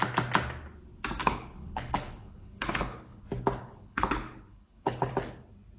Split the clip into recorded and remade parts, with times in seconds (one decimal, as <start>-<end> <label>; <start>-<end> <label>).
0.0-1.2 recorded; 1.2-3.2 remade; 3.2-3.6 recorded; 3.6-5.1 remade; 5.1-5.8 recorded